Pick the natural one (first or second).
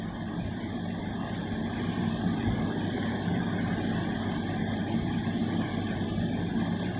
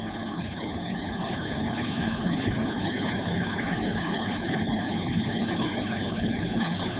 first